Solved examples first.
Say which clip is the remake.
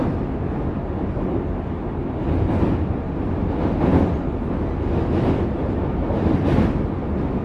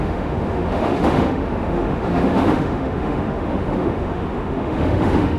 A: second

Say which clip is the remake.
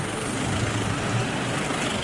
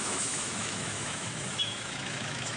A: second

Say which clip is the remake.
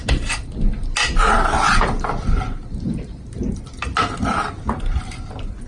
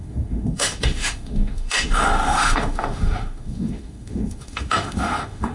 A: second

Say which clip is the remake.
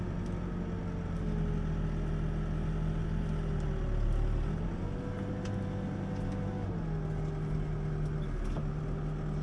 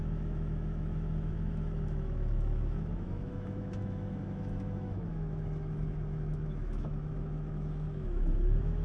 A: second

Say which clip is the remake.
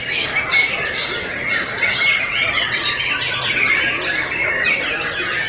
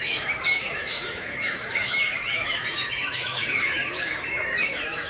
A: second